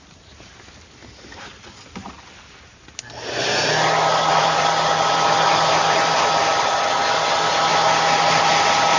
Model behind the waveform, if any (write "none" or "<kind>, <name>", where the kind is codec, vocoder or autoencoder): none